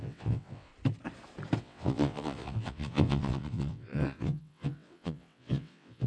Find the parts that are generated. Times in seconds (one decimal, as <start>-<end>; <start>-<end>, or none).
0.0-0.7; 1.6-6.1

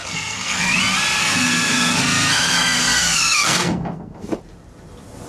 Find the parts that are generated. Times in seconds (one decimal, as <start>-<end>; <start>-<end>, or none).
0.0-0.7; 1.2-4.4

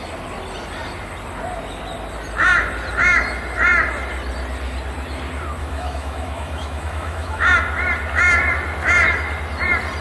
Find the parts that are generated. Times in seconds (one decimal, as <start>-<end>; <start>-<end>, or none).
5.6-7.4